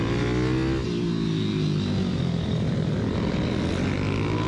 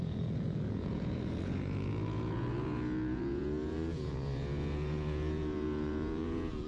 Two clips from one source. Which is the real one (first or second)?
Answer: first